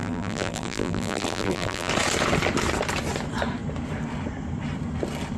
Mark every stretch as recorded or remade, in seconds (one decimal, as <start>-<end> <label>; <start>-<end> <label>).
0.0-1.9 remade; 1.9-5.4 recorded